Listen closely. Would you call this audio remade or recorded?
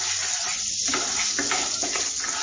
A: recorded